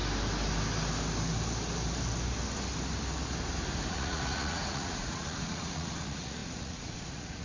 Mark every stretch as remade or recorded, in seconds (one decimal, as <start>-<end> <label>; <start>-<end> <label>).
0.0-3.9 recorded; 3.9-7.4 remade